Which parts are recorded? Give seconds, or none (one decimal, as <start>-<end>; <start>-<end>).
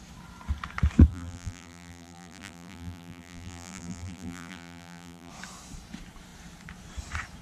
0.0-1.1; 5.3-7.4